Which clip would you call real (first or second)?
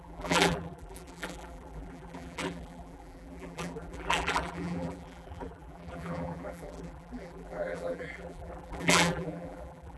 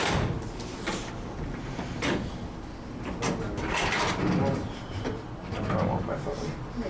second